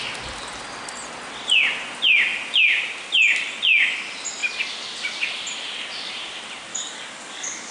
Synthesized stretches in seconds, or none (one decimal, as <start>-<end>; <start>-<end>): 6.7-7.7

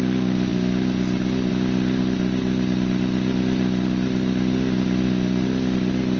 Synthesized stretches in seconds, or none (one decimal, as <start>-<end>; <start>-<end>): none

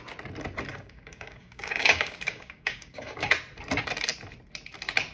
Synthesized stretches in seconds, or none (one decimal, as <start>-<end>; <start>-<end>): 0.7-3.3

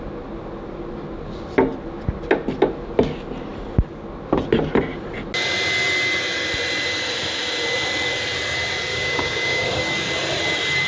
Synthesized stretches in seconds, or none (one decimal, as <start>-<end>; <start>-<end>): 8.9-9.8

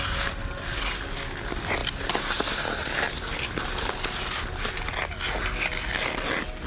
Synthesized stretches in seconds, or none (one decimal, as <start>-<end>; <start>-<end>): none

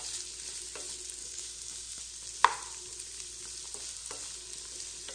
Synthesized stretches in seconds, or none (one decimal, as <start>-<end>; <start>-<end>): 1.2-2.0